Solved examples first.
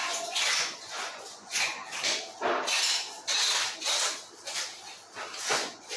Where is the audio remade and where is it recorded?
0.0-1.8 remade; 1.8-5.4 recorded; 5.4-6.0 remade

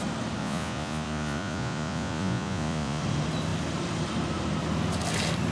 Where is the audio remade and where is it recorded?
0.0-0.4 recorded; 0.4-3.0 remade; 3.0-5.5 recorded

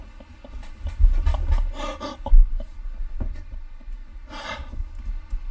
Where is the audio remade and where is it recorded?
0.0-5.5 recorded

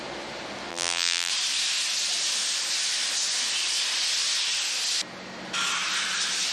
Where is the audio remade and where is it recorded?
0.0-0.7 recorded; 0.7-1.3 remade; 1.3-6.5 recorded